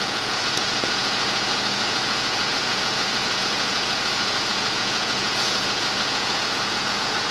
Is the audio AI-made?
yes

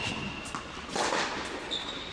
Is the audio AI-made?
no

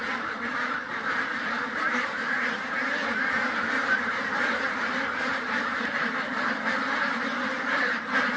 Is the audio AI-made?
yes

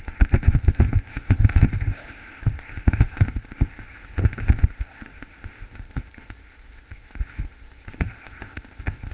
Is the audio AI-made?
yes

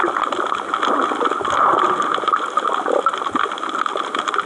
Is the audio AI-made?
no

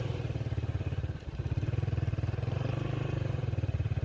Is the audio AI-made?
yes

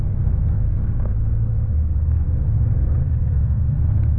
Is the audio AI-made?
yes